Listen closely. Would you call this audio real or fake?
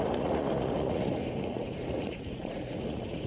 fake